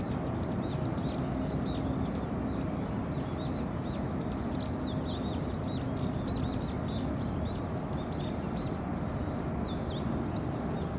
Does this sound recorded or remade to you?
recorded